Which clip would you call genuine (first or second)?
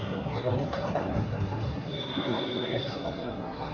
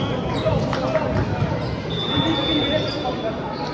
second